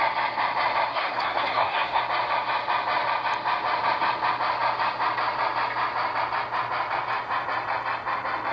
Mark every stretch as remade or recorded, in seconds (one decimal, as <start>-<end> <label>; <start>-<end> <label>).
0.0-0.9 recorded; 0.9-2.0 remade; 2.0-8.5 recorded